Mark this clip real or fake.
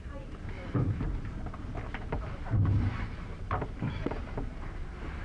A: fake